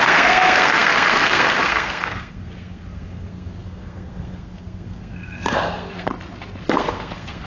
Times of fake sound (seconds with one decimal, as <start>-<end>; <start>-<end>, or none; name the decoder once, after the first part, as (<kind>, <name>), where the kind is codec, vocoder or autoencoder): 0.0-6.1 (codec, SNAC); 6.6-7.5